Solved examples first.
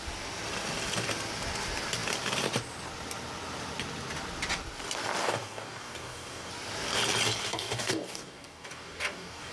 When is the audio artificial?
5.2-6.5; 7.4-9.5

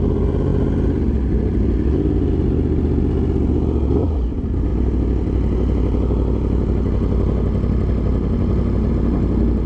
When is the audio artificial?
none

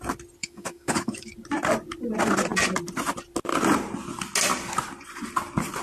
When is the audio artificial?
0.4-1.3

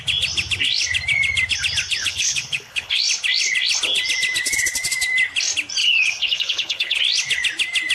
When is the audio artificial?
2.0-3.0; 5.8-7.0

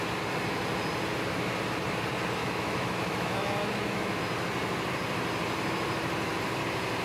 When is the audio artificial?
2.4-4.2